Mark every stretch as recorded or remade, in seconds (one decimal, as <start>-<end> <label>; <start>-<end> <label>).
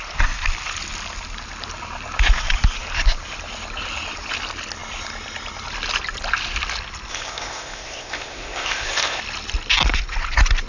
0.0-7.1 recorded; 7.1-9.2 remade; 9.2-10.7 recorded